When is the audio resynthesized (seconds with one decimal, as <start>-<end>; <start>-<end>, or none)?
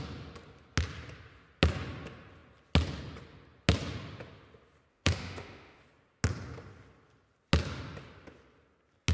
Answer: 4.9-5.8